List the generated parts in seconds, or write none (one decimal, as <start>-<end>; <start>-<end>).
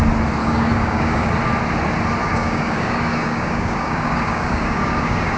0.4-1.3; 2.2-5.4